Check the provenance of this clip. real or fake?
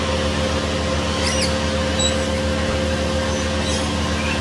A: real